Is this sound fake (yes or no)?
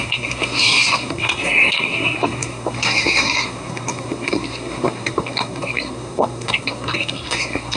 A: yes